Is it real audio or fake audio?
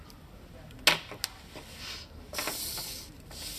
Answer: real